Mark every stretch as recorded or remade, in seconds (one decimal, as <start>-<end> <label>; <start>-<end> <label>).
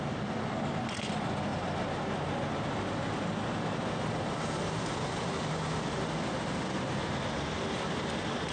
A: 0.0-8.5 recorded